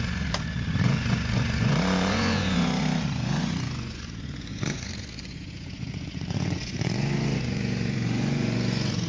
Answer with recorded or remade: remade